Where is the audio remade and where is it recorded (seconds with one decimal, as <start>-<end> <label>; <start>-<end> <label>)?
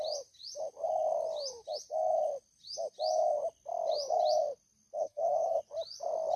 0.0-5.0 recorded; 5.0-5.6 remade; 5.6-6.4 recorded